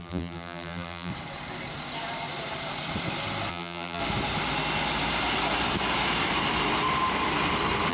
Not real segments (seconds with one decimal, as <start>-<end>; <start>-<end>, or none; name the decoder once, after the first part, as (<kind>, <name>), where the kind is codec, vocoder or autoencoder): 0.0-1.1 (vocoder, BigVGAN v2); 3.5-4.0